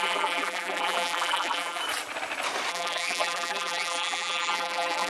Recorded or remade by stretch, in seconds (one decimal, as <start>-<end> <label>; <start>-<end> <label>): 0.0-1.8 remade; 1.8-2.7 recorded; 2.7-5.1 remade